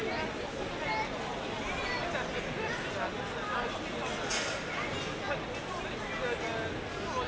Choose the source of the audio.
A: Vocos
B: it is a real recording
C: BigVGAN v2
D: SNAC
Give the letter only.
B